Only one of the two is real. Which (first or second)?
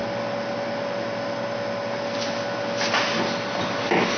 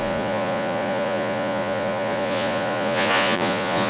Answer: first